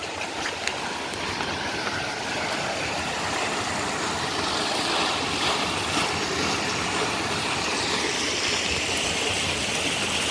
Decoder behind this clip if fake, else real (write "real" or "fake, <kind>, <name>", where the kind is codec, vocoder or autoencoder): real